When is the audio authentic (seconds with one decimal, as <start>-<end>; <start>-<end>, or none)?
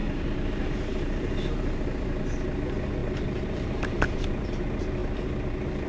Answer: 2.2-3.0; 4.5-5.9